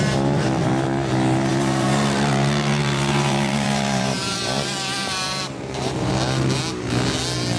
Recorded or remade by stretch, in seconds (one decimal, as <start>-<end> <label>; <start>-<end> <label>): 0.0-1.5 recorded; 1.5-6.1 remade; 6.1-7.6 recorded